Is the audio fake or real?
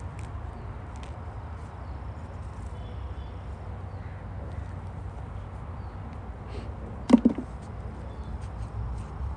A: real